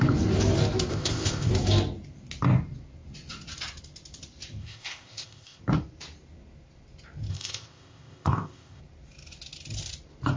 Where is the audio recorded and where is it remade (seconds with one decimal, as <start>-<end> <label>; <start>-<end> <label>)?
0.0-0.9 recorded; 0.9-1.5 remade; 1.5-4.6 recorded; 4.6-5.6 remade; 5.6-7.3 recorded; 7.3-8.8 remade; 8.8-10.4 recorded

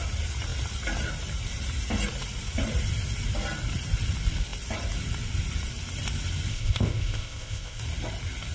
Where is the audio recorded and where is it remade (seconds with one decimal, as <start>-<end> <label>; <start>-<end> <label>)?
0.0-6.5 recorded; 6.5-7.8 remade; 7.8-8.5 recorded

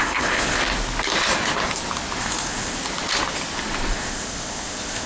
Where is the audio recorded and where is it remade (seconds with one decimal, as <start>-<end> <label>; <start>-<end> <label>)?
0.0-0.6 remade; 0.6-2.2 recorded; 2.2-2.8 remade; 2.8-3.9 recorded; 3.9-5.1 remade

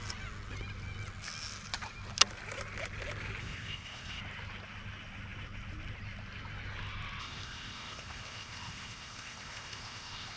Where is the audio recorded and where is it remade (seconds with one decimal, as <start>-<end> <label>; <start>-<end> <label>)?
0.0-3.4 recorded; 3.4-4.2 remade; 4.2-7.2 recorded; 7.2-10.4 remade

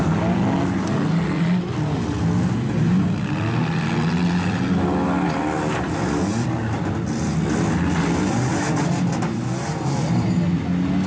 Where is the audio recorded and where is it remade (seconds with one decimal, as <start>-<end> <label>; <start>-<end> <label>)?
0.0-11.1 recorded

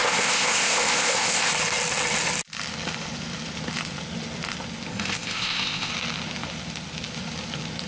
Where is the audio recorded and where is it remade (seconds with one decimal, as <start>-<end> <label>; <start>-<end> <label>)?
0.0-1.5 remade; 1.5-4.9 recorded; 4.9-5.9 remade; 5.9-7.9 recorded

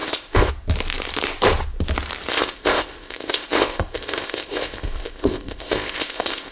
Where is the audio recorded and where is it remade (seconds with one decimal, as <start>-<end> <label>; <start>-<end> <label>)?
0.0-0.5 remade; 0.5-2.3 recorded; 2.3-6.5 remade

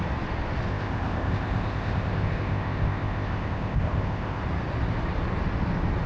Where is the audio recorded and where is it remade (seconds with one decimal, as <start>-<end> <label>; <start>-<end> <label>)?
0.0-0.7 recorded; 0.7-4.4 remade; 4.4-6.1 recorded